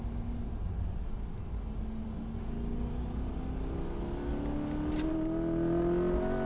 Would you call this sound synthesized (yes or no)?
no